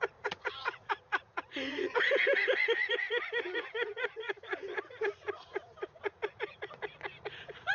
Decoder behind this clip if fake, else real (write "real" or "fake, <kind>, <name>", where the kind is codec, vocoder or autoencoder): fake, vocoder, Vocos